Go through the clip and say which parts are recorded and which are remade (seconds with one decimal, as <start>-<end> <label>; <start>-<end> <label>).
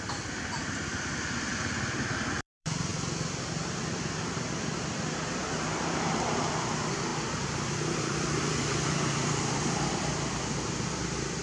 0.0-2.9 remade; 2.9-5.5 recorded; 5.5-7.1 remade; 7.1-8.0 recorded; 8.0-11.4 remade